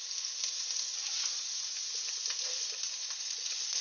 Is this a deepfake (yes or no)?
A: no